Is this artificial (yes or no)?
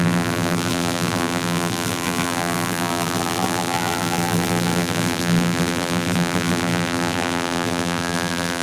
yes